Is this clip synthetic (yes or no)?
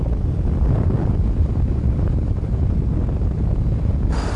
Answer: no